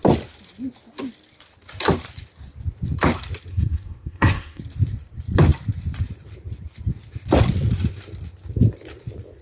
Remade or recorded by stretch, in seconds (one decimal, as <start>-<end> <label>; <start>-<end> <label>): 0.0-3.5 recorded; 3.5-4.6 remade; 4.6-9.4 recorded